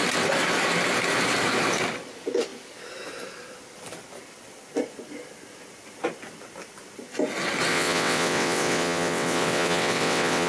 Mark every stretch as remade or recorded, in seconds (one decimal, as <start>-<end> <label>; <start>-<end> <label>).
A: 0.0-7.7 recorded; 7.7-10.5 remade